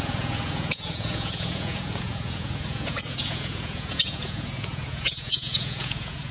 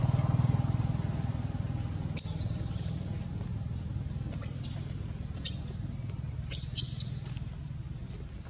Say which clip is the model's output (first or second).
first